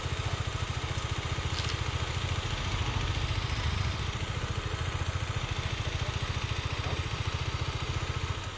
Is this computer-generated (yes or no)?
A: no